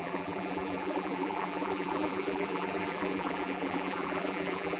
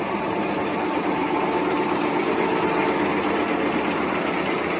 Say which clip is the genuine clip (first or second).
second